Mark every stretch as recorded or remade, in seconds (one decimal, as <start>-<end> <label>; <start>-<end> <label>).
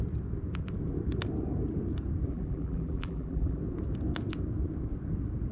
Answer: 0.0-2.3 recorded; 2.3-3.6 remade; 3.6-5.5 recorded